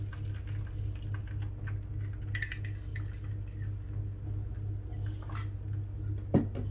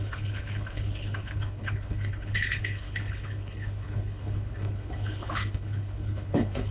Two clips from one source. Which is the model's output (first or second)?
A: second